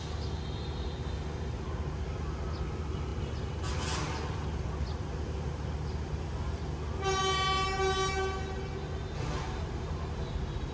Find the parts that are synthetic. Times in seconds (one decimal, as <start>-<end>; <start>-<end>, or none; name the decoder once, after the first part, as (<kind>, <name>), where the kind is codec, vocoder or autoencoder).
none